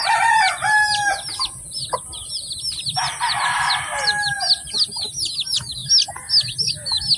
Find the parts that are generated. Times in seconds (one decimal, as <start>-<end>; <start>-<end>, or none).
none